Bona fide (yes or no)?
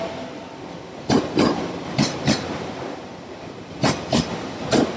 yes